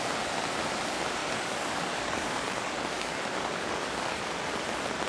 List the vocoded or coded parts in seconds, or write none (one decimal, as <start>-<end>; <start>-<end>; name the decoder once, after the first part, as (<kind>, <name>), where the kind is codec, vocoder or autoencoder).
1.2-4.3 (codec, DAC)